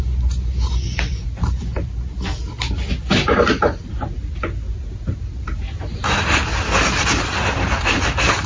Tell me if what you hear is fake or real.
real